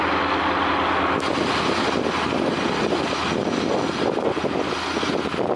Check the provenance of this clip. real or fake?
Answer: real